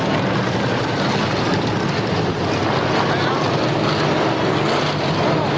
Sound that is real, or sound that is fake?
real